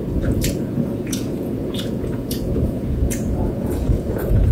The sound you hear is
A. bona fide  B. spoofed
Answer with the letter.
B